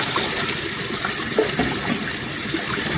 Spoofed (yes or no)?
no